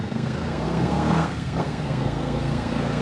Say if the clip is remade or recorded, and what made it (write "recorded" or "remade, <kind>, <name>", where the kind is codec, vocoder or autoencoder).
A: remade, codec, SNAC